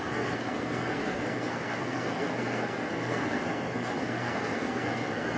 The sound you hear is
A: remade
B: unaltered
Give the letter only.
A